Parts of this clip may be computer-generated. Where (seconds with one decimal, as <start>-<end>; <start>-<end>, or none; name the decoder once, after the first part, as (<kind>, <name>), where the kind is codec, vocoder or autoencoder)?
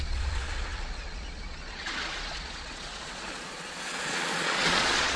0.0-5.2 (vocoder, Vocos)